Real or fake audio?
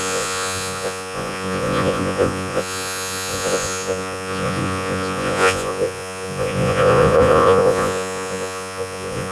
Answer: fake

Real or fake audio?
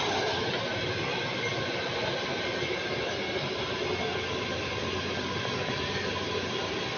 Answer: real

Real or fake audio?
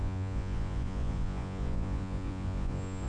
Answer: fake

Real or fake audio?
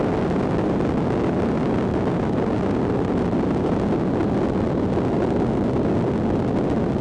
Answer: real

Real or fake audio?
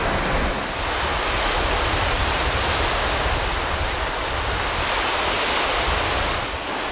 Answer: real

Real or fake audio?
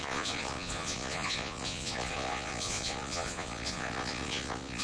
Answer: fake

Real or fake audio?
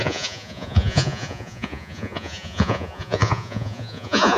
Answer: fake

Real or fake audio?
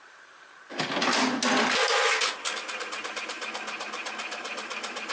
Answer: real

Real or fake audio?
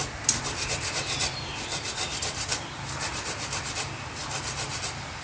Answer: real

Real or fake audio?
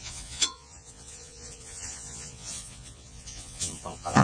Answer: fake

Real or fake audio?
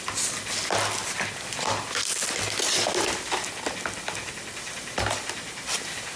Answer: real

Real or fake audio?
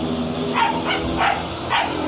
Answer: real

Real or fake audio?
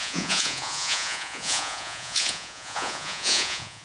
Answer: fake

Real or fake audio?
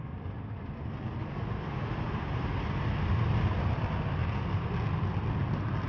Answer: real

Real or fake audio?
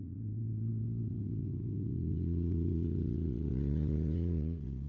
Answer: fake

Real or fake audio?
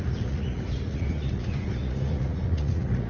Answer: fake